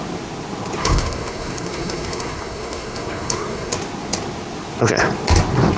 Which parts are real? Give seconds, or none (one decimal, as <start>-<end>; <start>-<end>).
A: 0.0-0.8; 3.7-5.8